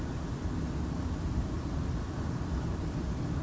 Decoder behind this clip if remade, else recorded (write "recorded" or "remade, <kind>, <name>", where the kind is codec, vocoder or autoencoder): recorded